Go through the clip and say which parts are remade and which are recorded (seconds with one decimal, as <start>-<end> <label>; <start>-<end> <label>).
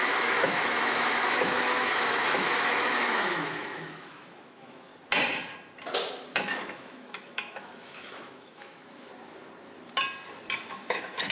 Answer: 0.0-4.9 remade; 4.9-6.3 recorded; 6.3-9.1 remade; 9.1-10.7 recorded; 10.7-11.3 remade